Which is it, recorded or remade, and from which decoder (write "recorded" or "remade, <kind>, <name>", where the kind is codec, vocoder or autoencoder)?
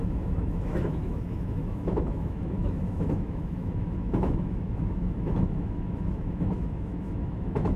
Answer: remade, autoencoder, DAC-VAE